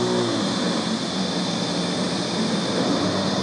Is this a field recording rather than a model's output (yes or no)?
yes